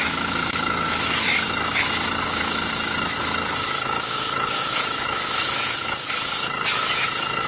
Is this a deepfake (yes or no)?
yes